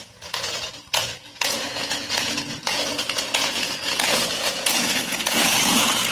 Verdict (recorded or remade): remade